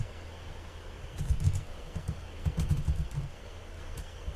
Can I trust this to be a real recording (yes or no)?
no